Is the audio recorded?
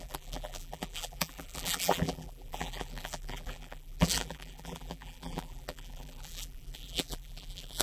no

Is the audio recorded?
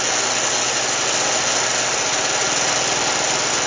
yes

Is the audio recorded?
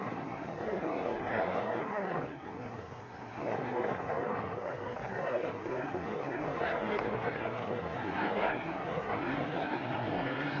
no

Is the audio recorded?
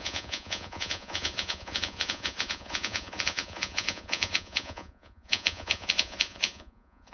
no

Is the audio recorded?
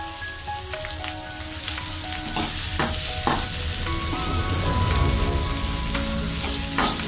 yes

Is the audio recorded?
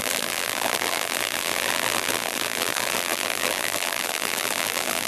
no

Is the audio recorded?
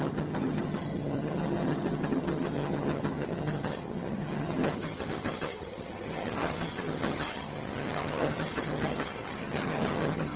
no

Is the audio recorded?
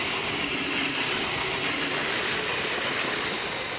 yes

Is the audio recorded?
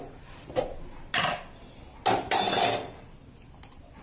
yes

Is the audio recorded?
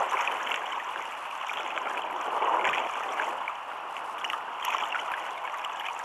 yes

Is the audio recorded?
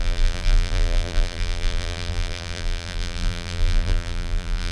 no